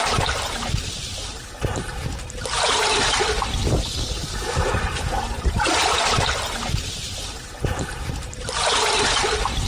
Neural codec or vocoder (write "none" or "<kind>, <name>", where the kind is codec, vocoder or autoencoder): none